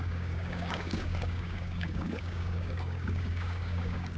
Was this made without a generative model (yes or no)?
no